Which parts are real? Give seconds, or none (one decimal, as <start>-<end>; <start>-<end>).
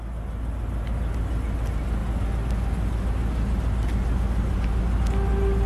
0.0-5.7